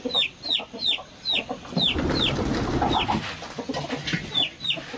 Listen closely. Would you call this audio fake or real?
real